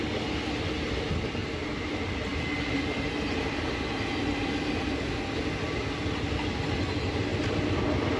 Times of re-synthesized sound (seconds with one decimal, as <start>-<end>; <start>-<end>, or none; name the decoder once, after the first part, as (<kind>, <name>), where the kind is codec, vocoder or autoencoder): 1.4-1.9 (vocoder, BigVGAN v2)